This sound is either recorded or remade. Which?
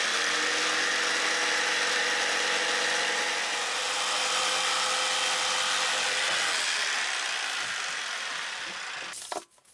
recorded